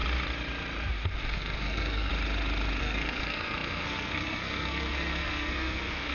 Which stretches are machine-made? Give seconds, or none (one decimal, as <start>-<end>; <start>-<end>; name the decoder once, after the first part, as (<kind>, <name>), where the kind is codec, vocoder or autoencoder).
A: 1.3-2.1 (codec, SNAC); 2.8-6.1